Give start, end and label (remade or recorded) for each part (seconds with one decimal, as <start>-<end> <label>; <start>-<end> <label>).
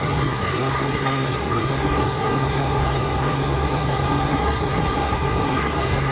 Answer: 0.0-6.1 remade